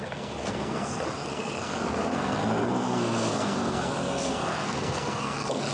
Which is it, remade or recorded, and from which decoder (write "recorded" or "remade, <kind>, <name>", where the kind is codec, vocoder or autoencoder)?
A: remade, codec, SNAC